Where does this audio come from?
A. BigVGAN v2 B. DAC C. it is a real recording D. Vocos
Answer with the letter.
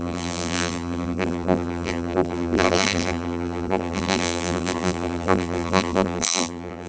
A